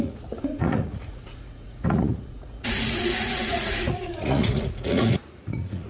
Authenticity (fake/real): fake